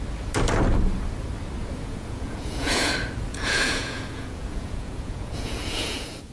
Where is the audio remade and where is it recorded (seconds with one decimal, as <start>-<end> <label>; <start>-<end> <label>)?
0.0-1.6 recorded; 1.6-2.9 remade; 2.9-3.3 recorded; 3.3-6.3 remade